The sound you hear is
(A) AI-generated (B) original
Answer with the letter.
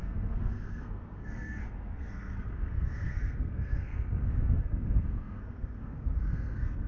A